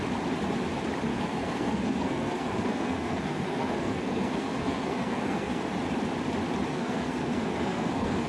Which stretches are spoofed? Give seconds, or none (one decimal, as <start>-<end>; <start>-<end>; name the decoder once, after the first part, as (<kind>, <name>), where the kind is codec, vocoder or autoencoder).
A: 1.1-5.6 (codec, SNAC); 6.7-8.3